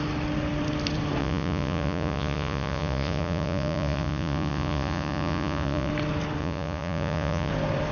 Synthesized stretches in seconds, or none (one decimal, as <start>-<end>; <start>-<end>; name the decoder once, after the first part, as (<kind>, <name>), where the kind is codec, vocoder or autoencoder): 1.2-5.9 (vocoder, Vocos); 6.4-7.5